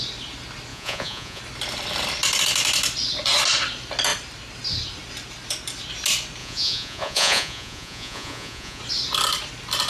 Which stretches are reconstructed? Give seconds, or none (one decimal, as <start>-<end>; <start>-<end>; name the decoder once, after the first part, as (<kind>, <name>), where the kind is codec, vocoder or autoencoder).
0.7-1.4 (vocoder, Vocos); 6.4-8.8